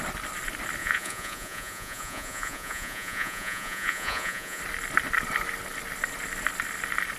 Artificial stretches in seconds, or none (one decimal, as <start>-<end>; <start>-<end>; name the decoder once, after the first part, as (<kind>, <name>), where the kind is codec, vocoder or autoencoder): 0.8-4.6 (vocoder, Vocos)